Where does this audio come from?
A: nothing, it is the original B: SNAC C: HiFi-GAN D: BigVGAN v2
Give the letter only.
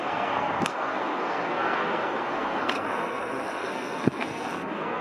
B